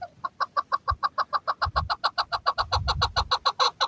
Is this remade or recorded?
recorded